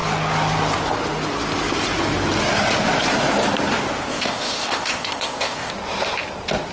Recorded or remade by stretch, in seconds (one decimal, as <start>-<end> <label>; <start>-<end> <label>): 0.0-4.1 recorded; 4.1-5.7 remade; 5.7-6.7 recorded

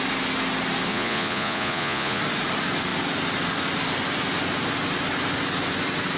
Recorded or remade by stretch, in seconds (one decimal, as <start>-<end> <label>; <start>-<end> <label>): 0.0-0.9 recorded; 0.9-2.2 remade; 2.2-6.2 recorded

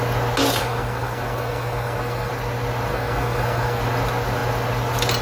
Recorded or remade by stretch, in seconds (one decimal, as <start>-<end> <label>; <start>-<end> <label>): 0.0-0.6 recorded; 0.6-2.3 remade; 2.3-2.9 recorded; 2.9-3.8 remade; 3.8-5.2 recorded

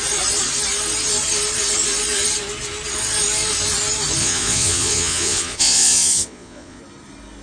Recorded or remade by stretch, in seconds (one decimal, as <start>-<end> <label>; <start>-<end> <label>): 0.0-4.2 recorded; 4.2-6.8 remade; 6.8-7.4 recorded